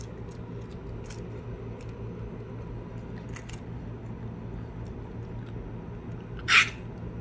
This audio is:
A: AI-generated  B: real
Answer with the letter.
B